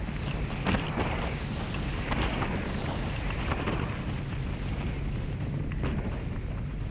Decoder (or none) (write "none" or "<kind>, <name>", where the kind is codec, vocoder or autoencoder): none